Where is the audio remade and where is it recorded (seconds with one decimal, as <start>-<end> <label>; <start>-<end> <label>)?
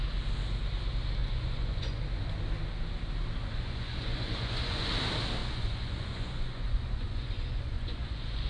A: 0.0-1.2 recorded; 1.2-2.0 remade; 2.0-3.5 recorded; 3.5-4.9 remade; 4.9-5.4 recorded; 5.4-8.5 remade